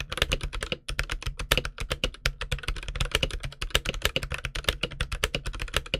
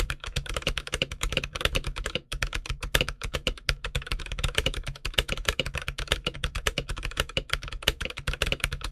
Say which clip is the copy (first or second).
second